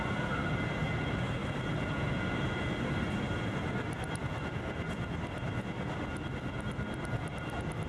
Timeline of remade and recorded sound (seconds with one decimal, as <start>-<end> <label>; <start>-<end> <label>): 0.0-7.9 recorded